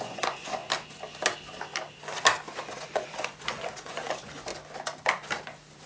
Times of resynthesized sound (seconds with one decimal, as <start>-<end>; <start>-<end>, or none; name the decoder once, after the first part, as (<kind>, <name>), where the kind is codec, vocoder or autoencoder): 0.0-0.6 (vocoder, Vocos); 2.7-4.5